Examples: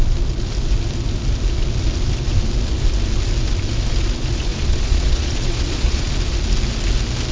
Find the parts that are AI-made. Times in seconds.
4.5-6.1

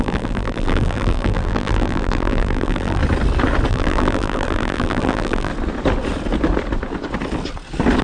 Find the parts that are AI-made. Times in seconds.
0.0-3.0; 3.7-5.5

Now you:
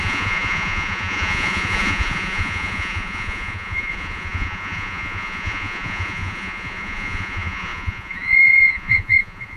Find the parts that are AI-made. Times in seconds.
0.0-9.6

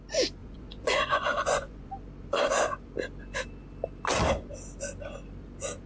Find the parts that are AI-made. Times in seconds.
0.4-1.9

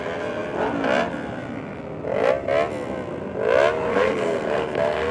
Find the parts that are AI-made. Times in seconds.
3.9-5.1